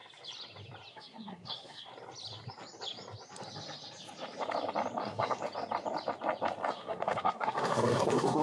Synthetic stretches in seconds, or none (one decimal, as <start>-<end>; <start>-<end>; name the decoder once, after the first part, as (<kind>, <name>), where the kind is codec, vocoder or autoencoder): 0.9-1.9 (codec, SNAC); 5.0-5.4; 6.7-8.4